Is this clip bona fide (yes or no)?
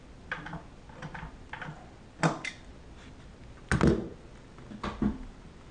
yes